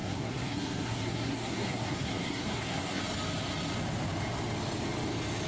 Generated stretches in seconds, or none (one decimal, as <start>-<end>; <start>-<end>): 0.0-3.0